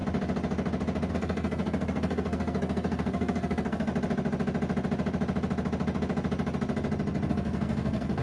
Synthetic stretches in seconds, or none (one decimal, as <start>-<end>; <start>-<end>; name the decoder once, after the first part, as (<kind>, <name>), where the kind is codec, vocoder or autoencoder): 1.1-3.9 (codec, SNAC); 7.3-8.2